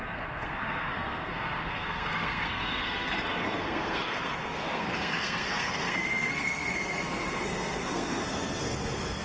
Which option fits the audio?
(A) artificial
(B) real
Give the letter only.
A